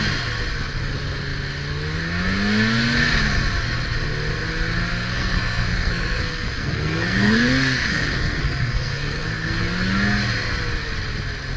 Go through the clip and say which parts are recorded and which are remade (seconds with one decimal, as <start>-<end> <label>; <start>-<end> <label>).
0.0-4.9 recorded; 4.9-9.6 remade; 9.6-11.6 recorded